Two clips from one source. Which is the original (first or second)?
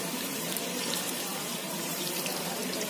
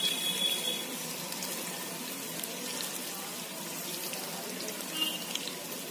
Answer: second